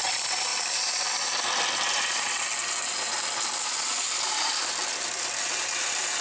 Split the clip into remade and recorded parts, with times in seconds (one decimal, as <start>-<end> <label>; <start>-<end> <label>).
0.0-6.2 remade